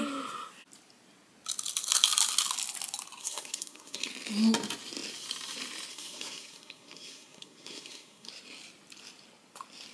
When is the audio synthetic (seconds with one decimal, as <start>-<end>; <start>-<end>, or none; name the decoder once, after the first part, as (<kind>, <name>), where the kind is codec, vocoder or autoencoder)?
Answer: 3.2-4.1 (codec, SNAC); 5.9-8.3